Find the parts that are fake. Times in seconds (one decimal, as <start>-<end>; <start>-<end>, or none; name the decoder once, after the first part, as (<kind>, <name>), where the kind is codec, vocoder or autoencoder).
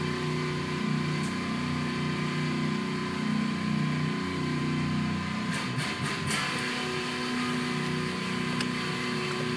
none